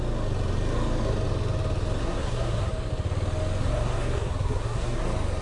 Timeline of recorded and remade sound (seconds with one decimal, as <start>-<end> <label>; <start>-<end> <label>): 0.0-2.0 recorded; 2.0-2.7 remade; 2.7-3.6 recorded; 3.6-5.0 remade; 5.0-5.4 recorded